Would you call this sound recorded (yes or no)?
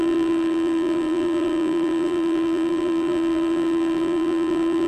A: no